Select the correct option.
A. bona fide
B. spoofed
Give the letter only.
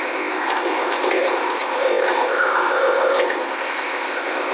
B